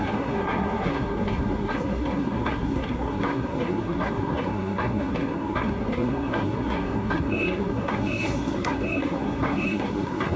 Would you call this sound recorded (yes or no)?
no